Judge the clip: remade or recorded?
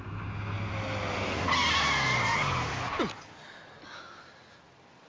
recorded